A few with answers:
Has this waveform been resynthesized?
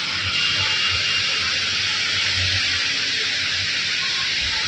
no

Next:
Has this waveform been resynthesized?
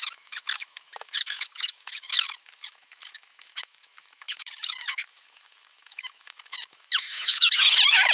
yes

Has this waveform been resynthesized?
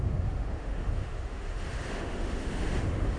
yes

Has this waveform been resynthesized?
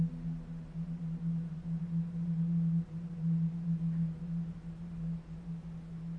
no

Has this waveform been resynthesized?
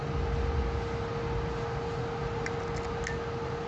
no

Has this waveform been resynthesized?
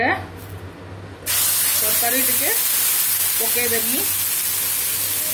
no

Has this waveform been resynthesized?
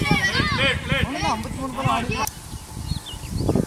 no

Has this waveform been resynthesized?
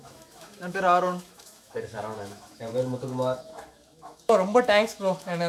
yes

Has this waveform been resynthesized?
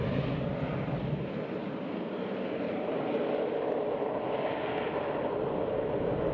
no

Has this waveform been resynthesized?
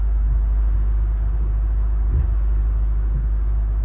no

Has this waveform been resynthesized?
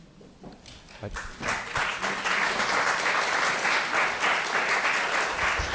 no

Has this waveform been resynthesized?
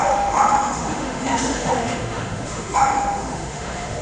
yes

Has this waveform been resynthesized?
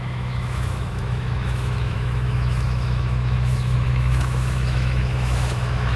yes